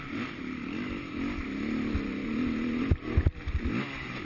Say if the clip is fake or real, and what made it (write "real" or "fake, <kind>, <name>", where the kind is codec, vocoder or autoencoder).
real